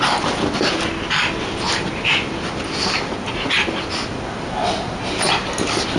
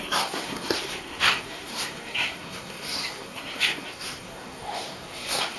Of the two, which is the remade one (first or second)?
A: second